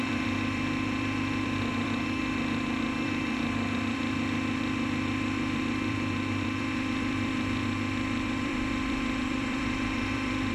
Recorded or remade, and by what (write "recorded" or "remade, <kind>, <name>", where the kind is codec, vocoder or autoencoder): remade, vocoder, BigVGAN v2